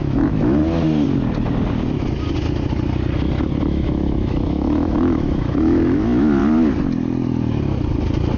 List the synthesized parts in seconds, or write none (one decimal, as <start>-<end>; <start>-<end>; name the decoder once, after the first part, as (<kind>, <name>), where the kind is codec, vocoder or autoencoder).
0.0-0.6 (autoencoder, DAC-VAE); 3.6-6.4

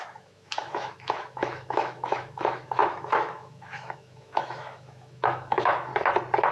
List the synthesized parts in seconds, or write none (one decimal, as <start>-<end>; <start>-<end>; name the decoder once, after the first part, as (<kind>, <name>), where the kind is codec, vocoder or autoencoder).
0.0-5.9 (autoencoder, DAC-VAE)

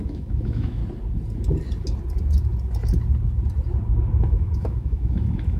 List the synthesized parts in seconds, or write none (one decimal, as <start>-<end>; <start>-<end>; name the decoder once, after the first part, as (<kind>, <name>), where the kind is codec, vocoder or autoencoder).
0.0-0.8 (autoencoder, DAC-VAE); 4.2-5.6

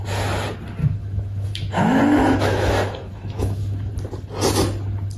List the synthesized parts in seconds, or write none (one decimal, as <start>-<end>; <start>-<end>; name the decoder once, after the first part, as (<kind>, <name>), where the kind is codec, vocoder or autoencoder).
0.8-3.9 (autoencoder, DAC-VAE)

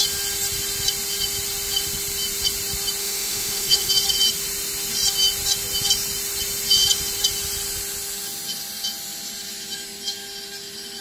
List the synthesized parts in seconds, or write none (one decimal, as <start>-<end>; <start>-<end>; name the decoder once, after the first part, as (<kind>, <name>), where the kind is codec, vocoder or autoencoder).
3.0-3.9 (autoencoder, DAC-VAE)